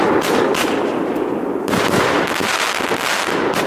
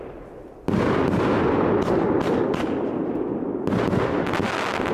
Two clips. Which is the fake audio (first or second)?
first